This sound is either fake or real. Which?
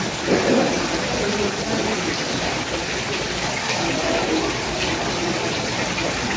real